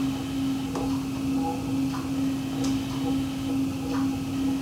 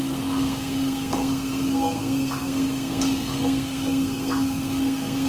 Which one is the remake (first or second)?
second